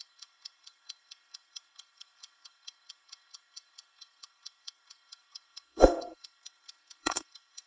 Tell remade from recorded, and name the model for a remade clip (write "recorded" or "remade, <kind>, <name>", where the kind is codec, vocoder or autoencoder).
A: remade, codec, SNAC